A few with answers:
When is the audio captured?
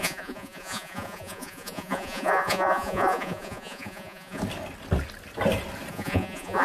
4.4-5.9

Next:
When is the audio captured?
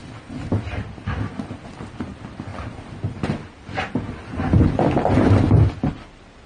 0.0-6.5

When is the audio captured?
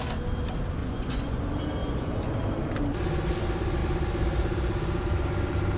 0.0-0.8; 1.4-1.8; 2.3-5.8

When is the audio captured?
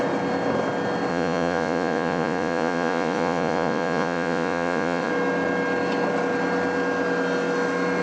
0.0-1.1; 5.1-8.0